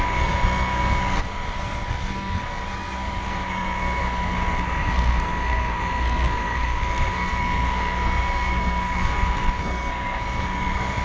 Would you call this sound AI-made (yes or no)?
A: yes